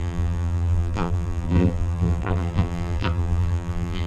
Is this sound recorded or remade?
remade